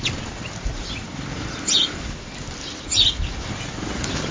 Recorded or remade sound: recorded